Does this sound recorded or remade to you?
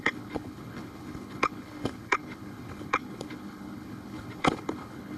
remade